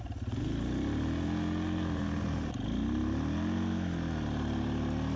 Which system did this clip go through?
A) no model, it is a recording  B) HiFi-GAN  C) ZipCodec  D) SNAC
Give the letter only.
A